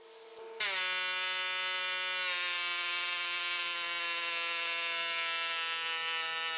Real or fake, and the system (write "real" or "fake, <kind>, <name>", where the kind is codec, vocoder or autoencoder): real